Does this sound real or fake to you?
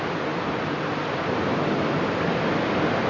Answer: real